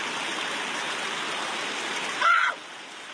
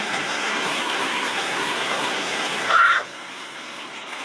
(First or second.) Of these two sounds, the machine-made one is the second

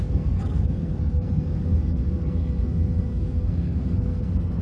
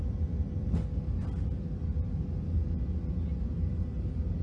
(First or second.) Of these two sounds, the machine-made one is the first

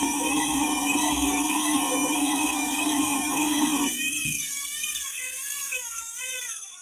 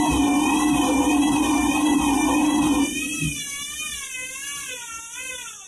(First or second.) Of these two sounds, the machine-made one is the first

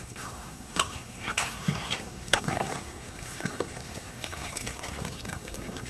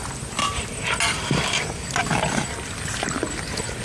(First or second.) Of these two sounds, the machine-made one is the first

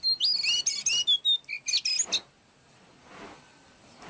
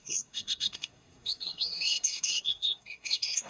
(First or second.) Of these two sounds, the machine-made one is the second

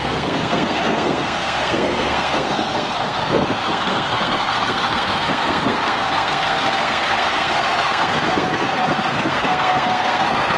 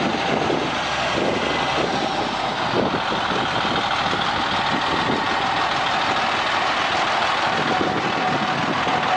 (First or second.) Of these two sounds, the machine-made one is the first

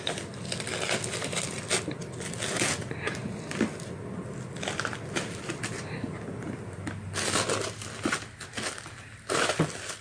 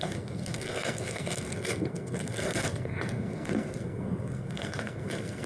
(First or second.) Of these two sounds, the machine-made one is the second